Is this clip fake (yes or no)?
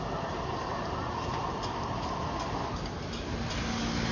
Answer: no